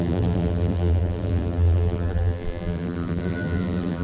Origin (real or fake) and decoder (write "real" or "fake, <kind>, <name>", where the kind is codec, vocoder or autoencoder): fake, vocoder, BigVGAN v2